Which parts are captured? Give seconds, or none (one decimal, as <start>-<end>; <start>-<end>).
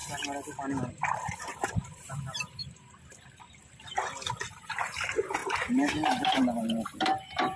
0.0-0.9; 2.6-4.5